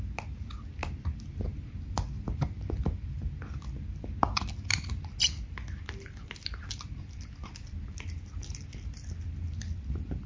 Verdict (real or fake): real